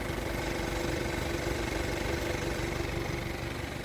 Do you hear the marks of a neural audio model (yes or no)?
no